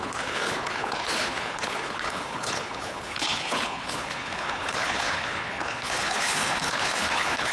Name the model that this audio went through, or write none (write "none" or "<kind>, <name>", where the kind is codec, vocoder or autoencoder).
codec, HILCodec